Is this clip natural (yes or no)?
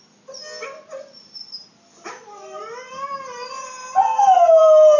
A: yes